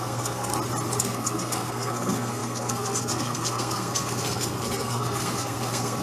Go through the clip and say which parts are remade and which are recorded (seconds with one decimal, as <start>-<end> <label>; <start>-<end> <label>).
0.0-0.5 remade; 0.5-1.0 recorded; 1.0-6.0 remade